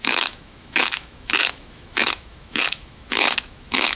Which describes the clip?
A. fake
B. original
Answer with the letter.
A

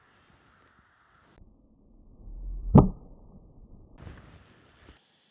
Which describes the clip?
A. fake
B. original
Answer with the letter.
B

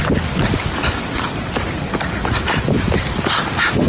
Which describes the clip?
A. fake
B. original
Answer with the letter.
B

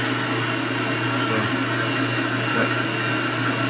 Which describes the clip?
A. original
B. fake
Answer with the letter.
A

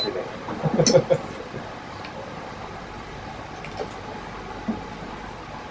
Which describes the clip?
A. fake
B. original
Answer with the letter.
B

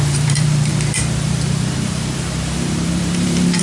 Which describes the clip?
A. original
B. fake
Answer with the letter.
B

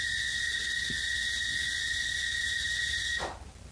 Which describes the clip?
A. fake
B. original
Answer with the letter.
B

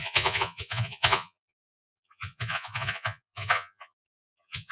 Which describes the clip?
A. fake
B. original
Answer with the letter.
A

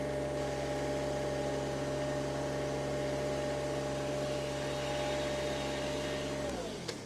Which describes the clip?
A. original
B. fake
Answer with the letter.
A